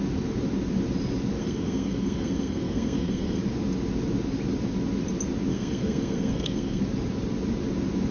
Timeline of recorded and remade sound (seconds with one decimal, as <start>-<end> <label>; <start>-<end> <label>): 0.0-1.4 recorded; 1.4-3.4 remade; 3.4-5.5 recorded; 5.5-6.8 remade; 6.8-8.1 recorded